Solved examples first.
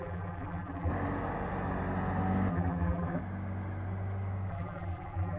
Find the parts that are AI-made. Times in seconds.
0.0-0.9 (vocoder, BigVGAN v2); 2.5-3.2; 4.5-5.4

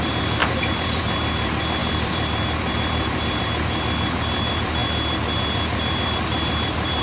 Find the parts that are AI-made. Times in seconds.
0.0-4.8 (vocoder, BigVGAN v2); 5.4-7.0